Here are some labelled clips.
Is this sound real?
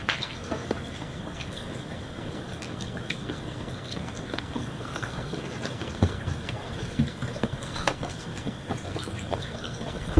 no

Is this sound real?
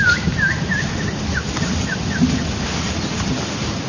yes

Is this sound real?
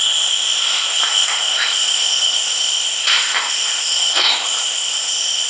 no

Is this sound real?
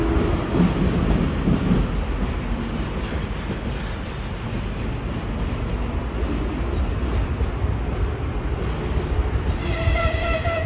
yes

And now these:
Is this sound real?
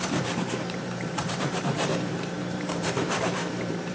no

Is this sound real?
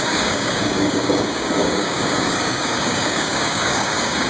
no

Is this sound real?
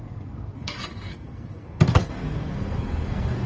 no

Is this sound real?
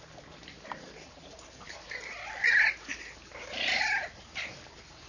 yes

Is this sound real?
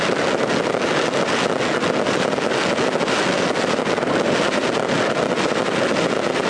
yes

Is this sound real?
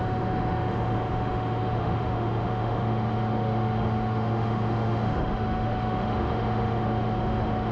no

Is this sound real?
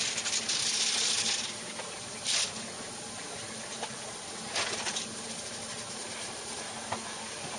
yes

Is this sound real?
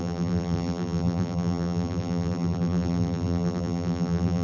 no